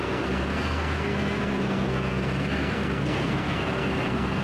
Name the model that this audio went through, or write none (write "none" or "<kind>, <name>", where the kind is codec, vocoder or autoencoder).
codec, SNAC